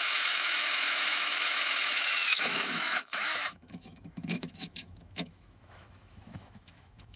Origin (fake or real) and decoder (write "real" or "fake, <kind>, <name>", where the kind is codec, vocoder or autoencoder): fake, autoencoder, DAC-VAE